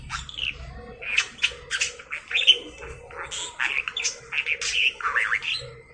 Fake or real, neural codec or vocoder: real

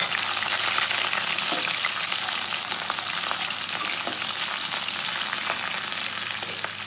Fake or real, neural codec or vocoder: real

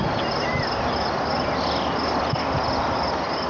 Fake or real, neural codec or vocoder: real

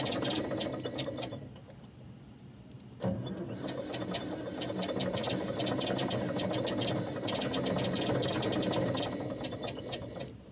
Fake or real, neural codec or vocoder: real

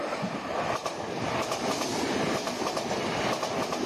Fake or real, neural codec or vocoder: real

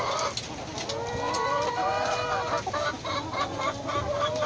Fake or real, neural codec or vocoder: real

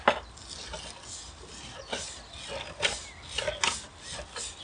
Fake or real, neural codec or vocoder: real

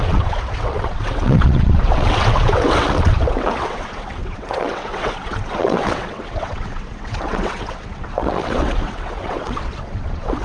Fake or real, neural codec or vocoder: fake, vocoder, WaveNeXt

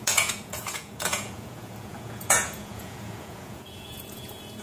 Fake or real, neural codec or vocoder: fake, vocoder, Vocos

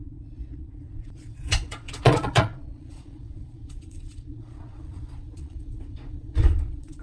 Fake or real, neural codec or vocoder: fake, vocoder, Vocos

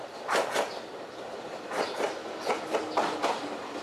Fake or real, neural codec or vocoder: real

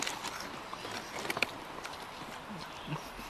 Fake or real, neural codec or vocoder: real